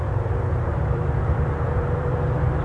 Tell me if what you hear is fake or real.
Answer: fake